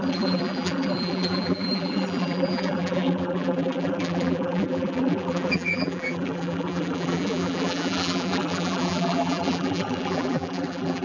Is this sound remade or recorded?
remade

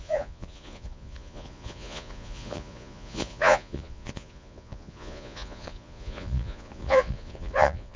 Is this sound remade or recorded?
remade